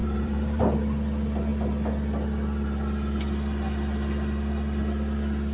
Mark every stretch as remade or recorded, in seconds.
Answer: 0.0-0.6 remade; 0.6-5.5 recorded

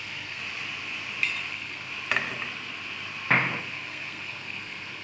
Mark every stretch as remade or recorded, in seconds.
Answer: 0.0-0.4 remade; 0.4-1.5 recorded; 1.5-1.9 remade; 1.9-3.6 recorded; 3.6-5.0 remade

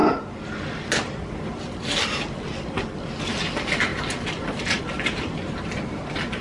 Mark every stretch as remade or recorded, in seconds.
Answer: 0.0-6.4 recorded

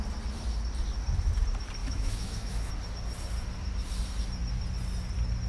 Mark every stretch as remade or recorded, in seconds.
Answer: 0.0-1.8 recorded; 1.8-2.7 remade; 2.7-5.5 recorded

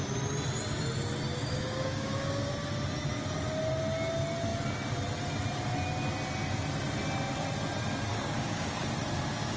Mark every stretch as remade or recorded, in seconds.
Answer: 0.0-1.3 recorded; 1.3-2.5 remade; 2.5-8.1 recorded; 8.1-8.9 remade; 8.9-9.6 recorded

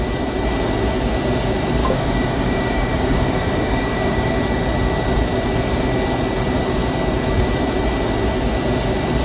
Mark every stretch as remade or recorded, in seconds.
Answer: 0.0-1.8 recorded; 1.8-4.3 remade; 4.3-9.2 recorded